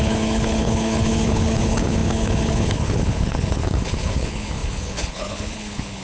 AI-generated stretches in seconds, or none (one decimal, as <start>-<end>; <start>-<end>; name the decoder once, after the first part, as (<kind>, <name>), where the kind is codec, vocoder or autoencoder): 0.0-6.0 (codec, HILCodec)